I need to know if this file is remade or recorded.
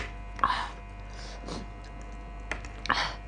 recorded